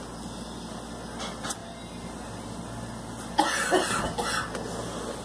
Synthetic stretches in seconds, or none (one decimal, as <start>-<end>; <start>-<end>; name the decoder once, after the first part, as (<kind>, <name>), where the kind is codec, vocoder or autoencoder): none